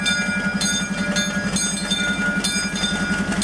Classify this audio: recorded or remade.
recorded